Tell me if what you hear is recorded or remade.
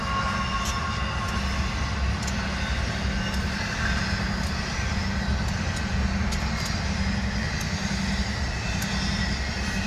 recorded